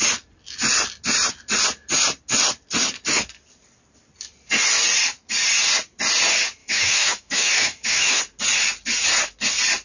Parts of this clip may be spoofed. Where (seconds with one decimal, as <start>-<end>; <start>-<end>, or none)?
6.6-8.2